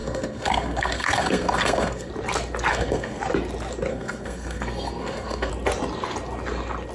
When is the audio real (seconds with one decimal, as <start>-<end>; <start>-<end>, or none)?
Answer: 2.1-2.7; 3.2-3.9; 5.5-6.9